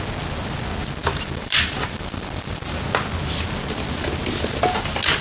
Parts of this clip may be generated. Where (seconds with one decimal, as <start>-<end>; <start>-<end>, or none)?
1.0-2.9